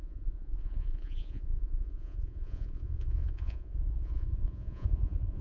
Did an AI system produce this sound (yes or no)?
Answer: yes